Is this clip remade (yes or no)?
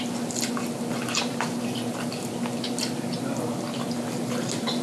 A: no